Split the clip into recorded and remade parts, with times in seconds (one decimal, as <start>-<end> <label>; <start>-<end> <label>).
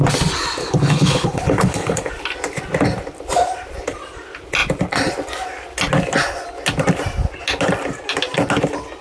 0.0-0.6 recorded; 0.6-2.1 remade; 2.1-9.0 recorded